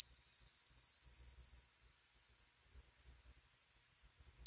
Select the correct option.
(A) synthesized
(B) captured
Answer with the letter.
B